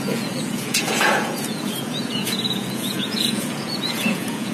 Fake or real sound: fake